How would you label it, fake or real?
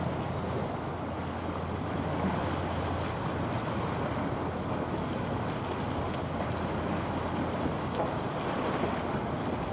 real